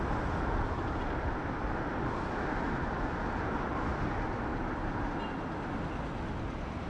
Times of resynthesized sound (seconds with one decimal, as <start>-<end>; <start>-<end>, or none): 4.5-5.2